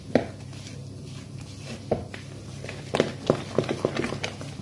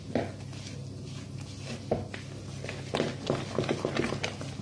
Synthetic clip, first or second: first